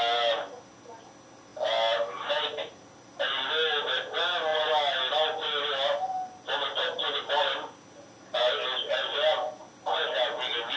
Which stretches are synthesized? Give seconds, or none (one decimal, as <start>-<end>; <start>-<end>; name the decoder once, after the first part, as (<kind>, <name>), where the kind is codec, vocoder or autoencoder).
none